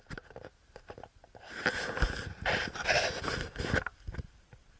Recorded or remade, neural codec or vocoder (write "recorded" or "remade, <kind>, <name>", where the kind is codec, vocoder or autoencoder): recorded